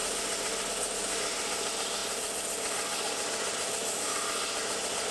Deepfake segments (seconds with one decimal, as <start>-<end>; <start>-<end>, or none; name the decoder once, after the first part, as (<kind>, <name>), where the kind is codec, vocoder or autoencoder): none